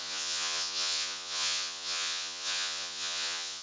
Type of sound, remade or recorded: remade